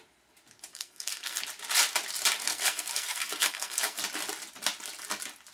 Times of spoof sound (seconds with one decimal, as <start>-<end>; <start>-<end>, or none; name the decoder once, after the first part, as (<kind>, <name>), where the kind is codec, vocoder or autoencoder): 0.7-1.4 (codec, SNAC); 2.4-4.0